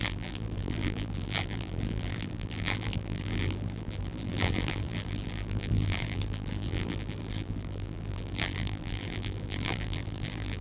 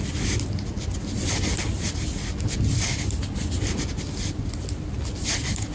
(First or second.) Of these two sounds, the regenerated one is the first